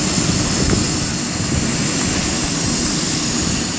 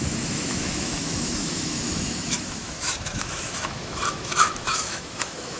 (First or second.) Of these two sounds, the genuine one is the first